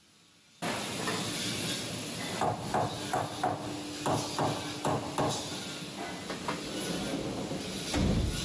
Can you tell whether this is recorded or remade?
recorded